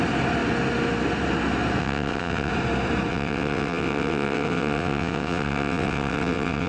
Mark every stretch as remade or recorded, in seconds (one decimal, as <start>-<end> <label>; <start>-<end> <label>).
0.0-1.8 recorded; 1.8-2.5 remade; 2.5-3.1 recorded; 3.1-6.7 remade

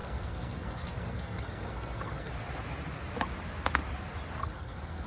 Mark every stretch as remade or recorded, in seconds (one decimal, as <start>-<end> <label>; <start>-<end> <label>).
0.0-2.3 remade; 2.3-4.4 recorded; 4.4-5.1 remade

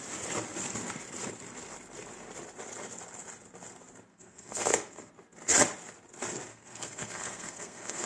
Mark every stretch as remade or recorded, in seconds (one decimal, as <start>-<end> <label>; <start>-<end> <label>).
0.0-4.1 recorded; 4.1-5.1 remade; 5.1-6.5 recorded; 6.5-8.1 remade

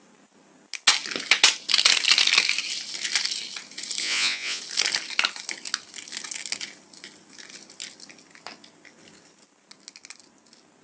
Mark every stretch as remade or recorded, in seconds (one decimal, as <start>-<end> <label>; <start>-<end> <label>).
0.0-4.0 recorded; 4.0-4.6 remade; 4.6-10.8 recorded

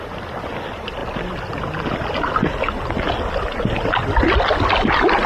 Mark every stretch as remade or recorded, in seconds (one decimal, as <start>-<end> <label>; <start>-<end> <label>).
0.0-1.0 remade; 1.0-4.2 recorded; 4.2-5.3 remade

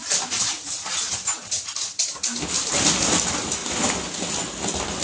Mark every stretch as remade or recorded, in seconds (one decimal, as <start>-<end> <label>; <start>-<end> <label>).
0.0-0.5 recorded; 0.5-1.1 remade; 1.1-5.0 recorded